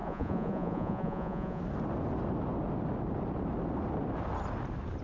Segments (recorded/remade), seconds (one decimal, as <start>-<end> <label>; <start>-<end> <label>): 0.0-1.6 remade; 1.6-5.0 recorded